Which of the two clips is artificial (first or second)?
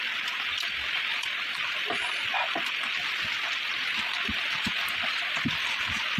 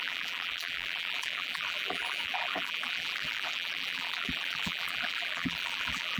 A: second